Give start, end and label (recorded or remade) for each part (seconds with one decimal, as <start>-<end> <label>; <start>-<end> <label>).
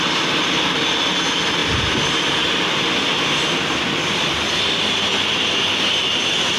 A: 0.0-6.6 recorded